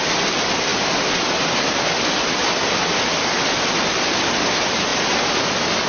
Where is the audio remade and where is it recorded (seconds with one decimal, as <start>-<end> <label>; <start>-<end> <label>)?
0.0-5.9 recorded